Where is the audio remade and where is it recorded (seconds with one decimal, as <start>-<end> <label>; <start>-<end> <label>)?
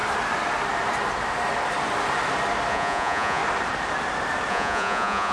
0.0-2.7 recorded; 2.7-3.4 remade; 3.4-4.5 recorded; 4.5-5.3 remade